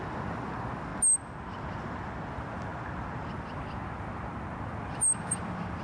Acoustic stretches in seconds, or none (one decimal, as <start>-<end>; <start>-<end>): 0.9-2.3; 2.7-3.3